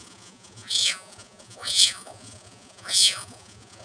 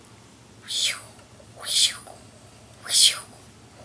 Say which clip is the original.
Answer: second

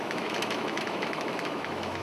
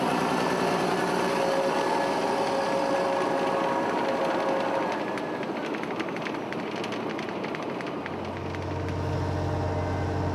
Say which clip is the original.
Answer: second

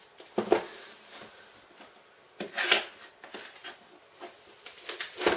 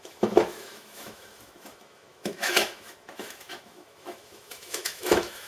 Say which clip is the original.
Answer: first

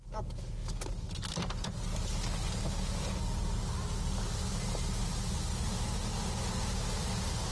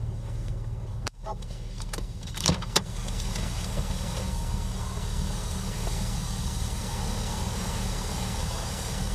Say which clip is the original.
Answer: first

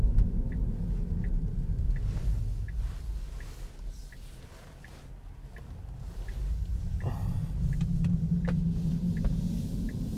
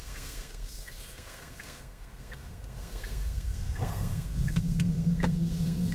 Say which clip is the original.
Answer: first